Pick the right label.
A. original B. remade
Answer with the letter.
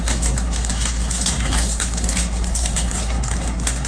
B